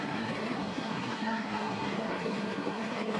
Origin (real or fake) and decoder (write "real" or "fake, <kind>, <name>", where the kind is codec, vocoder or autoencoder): fake, codec, SNAC